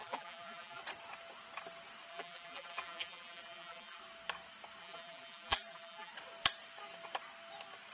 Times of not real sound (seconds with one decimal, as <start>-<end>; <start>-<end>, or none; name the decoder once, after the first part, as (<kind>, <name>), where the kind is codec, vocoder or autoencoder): 0.0-0.8 (vocoder, BigVGAN v2); 2.1-4.0; 4.8-6.1